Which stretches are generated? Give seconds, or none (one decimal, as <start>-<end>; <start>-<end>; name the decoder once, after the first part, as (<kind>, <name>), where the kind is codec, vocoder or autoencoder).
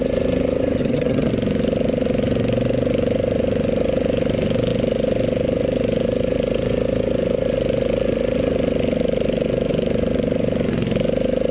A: 0.8-1.3 (vocoder, HiFi-GAN)